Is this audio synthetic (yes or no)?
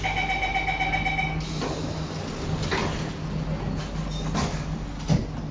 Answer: no